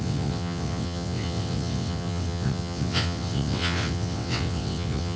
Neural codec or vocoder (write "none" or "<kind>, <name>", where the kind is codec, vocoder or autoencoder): vocoder, WaveNeXt